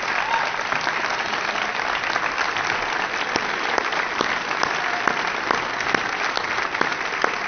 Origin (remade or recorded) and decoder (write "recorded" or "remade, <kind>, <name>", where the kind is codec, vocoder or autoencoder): recorded